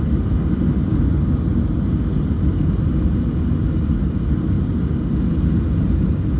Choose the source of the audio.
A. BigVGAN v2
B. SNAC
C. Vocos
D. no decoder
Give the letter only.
D